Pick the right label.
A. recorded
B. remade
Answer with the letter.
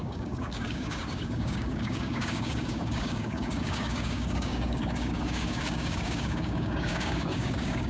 B